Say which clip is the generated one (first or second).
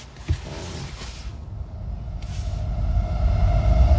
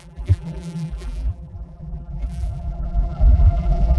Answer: second